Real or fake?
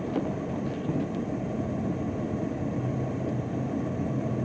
real